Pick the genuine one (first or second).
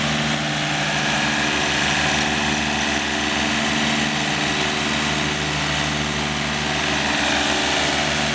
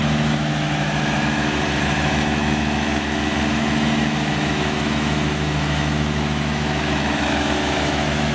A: first